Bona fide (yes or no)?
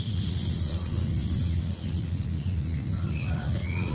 no